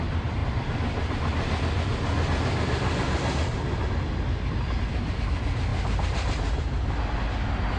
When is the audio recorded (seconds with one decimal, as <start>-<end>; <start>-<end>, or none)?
0.0-7.8